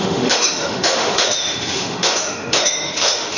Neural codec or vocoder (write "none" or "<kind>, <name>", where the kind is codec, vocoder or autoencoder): autoencoder, DAC-VAE